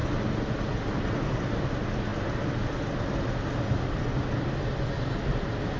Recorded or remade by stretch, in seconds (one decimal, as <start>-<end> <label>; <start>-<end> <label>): 0.0-5.8 recorded